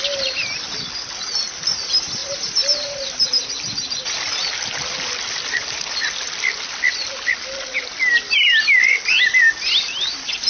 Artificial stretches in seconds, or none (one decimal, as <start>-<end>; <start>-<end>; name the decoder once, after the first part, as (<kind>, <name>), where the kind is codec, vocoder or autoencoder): none